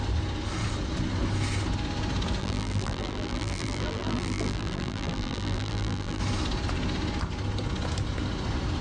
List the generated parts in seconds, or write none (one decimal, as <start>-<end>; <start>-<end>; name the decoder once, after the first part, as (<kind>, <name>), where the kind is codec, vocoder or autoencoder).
2.4-6.2 (vocoder, BigVGAN v2)